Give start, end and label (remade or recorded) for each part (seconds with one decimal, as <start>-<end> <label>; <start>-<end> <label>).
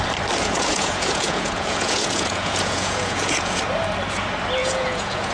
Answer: 0.0-0.4 recorded; 0.4-3.6 remade; 3.6-4.6 recorded; 4.6-5.3 remade